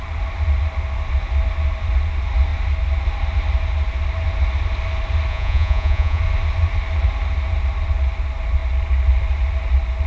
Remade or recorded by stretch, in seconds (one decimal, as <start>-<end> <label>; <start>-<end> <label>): 0.0-5.3 recorded; 5.3-6.2 remade; 6.2-10.1 recorded